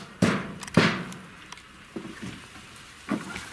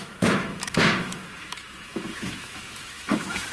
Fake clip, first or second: second